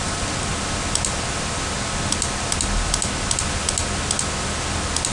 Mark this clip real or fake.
real